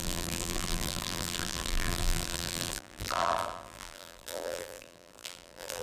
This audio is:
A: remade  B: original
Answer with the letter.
A